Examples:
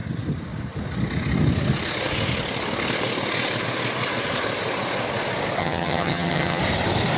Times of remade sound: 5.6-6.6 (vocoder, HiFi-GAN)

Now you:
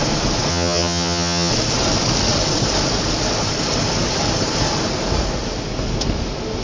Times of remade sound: 0.5-1.5 (vocoder, HiFi-GAN)